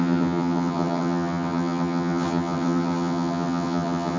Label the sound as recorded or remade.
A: remade